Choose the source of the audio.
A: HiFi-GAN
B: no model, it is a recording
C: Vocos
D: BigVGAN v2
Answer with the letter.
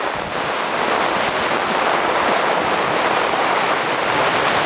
B